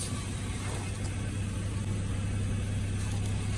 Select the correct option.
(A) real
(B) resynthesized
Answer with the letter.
A